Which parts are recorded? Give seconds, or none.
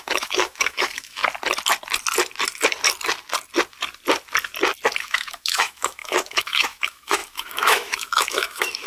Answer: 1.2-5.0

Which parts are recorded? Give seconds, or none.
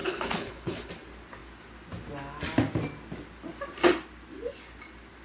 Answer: 0.9-5.2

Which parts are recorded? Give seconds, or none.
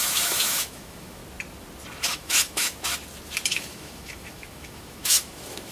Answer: 1.2-2.0; 2.9-3.5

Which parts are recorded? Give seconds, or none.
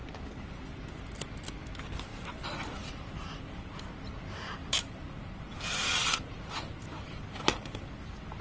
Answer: 0.0-2.1; 3.8-4.6; 7.9-8.4